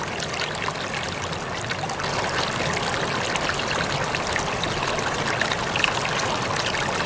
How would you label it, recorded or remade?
recorded